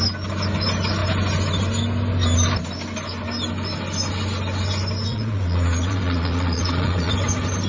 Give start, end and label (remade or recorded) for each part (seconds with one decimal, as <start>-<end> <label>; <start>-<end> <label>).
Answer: 0.0-5.1 recorded; 5.1-7.1 remade; 7.1-7.7 recorded